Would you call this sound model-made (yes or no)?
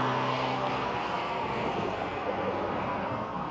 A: yes